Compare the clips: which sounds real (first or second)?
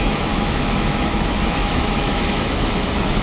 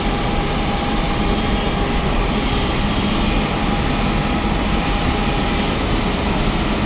second